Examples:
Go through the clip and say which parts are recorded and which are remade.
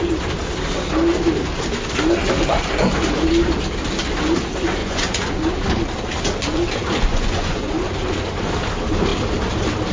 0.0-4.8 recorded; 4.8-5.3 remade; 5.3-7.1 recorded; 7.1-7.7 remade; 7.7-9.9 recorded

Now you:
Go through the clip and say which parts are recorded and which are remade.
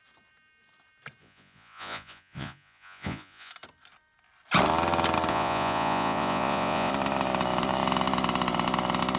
0.0-1.2 recorded; 1.2-3.5 remade; 3.5-5.3 recorded; 5.3-6.9 remade; 6.9-9.2 recorded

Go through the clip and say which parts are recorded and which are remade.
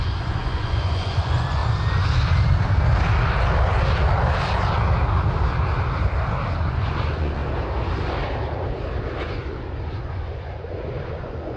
0.0-1.6 remade; 1.6-6.5 recorded; 6.5-7.4 remade; 7.4-9.2 recorded; 9.2-11.6 remade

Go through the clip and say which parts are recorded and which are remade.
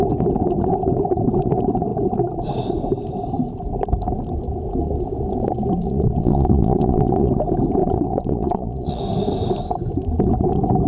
0.0-5.8 recorded; 5.8-7.3 remade; 7.3-7.8 recorded; 7.8-9.0 remade; 9.0-10.9 recorded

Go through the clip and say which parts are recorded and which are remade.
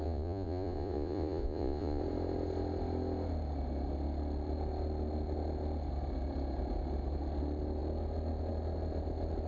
0.0-2.0 remade; 2.0-9.5 recorded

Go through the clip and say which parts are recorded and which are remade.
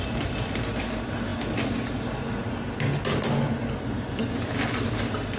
0.0-5.4 recorded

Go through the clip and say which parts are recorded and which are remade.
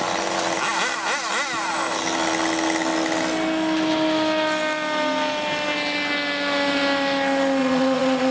0.0-7.6 recorded; 7.6-8.3 remade